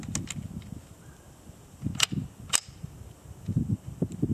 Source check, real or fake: real